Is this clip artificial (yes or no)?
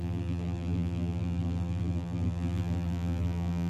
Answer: yes